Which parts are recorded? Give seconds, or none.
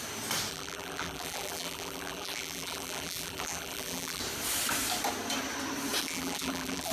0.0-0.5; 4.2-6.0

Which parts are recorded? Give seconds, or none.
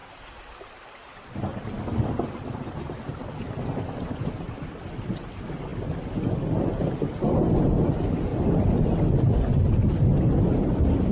0.0-11.1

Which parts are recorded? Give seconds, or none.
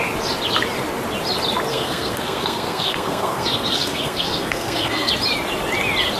0.0-1.7; 5.1-6.2